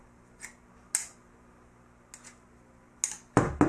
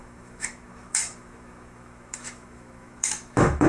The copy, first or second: second